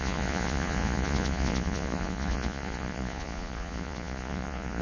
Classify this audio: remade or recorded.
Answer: remade